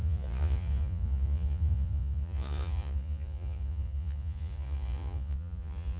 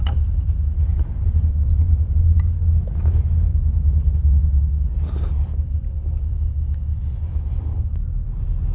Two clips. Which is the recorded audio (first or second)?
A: second